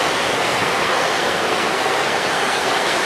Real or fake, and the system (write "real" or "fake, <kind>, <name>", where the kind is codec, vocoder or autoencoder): fake, codec, SNAC